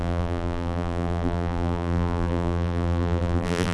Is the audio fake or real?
fake